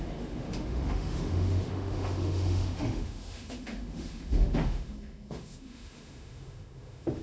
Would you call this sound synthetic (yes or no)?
yes